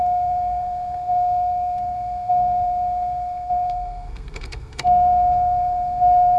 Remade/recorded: remade